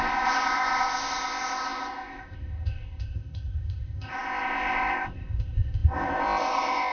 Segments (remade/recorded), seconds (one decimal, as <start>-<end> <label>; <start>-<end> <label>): 0.0-6.9 remade

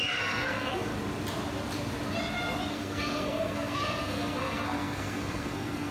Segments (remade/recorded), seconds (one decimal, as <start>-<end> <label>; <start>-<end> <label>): 0.0-0.9 remade; 0.9-2.7 recorded; 2.7-5.9 remade

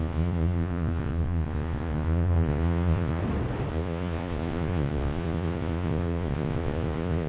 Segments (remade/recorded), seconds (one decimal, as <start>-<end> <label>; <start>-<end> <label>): 0.0-3.2 remade; 3.2-3.7 recorded; 3.7-7.3 remade

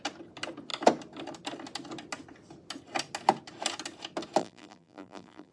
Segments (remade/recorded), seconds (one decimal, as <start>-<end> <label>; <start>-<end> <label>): 0.0-4.4 recorded; 4.4-5.5 remade

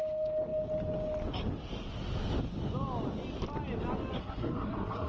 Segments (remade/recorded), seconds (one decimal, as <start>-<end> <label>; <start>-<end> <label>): 0.0-4.2 recorded; 4.2-5.1 remade